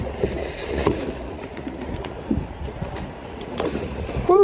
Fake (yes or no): yes